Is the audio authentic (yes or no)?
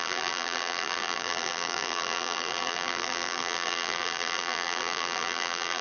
no